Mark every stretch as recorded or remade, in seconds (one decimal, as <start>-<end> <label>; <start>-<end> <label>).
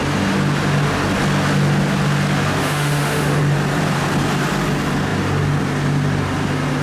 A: 0.0-2.6 recorded; 2.6-3.4 remade; 3.4-6.8 recorded